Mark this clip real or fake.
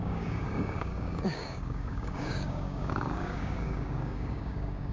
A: fake